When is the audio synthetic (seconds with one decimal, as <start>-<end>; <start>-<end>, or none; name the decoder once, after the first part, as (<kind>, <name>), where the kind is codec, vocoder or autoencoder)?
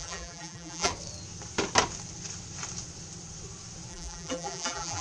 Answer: 0.0-0.9 (vocoder, BigVGAN v2); 3.9-5.0